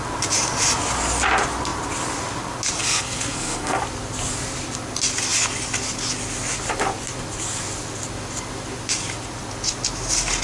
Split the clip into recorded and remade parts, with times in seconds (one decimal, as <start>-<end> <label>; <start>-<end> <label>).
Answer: 0.0-2.8 recorded; 2.8-3.8 remade; 3.8-10.4 recorded